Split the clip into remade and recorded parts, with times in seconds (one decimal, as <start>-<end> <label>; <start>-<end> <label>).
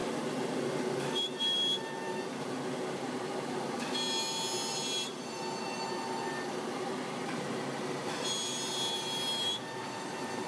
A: 0.0-10.5 recorded